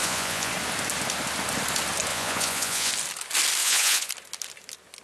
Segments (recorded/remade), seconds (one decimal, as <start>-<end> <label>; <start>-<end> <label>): 0.0-0.5 remade; 0.5-2.1 recorded; 2.1-2.9 remade; 2.9-3.6 recorded; 3.6-4.1 remade; 4.1-5.0 recorded

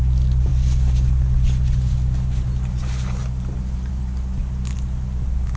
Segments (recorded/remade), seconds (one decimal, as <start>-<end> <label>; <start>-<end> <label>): 0.0-5.6 recorded

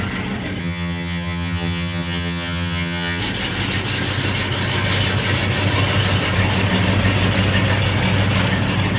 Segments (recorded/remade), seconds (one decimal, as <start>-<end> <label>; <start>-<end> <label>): 0.0-0.6 recorded; 0.6-3.2 remade; 3.2-9.0 recorded

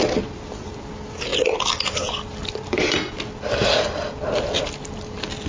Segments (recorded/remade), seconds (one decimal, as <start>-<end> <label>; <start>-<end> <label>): 0.0-5.5 recorded

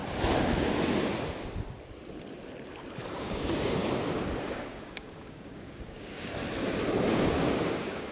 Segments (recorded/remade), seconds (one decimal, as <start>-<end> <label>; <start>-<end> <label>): 0.0-3.2 recorded; 3.2-3.8 remade; 3.8-4.4 recorded; 4.4-6.4 remade; 6.4-7.1 recorded; 7.1-8.1 remade

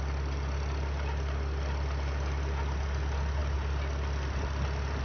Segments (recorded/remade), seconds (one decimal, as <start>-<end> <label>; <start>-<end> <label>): 0.0-5.0 recorded